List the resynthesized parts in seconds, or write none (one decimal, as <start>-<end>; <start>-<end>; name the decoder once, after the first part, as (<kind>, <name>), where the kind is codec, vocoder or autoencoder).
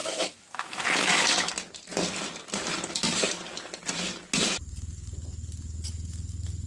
0.0-1.5 (autoencoder, DAC-VAE)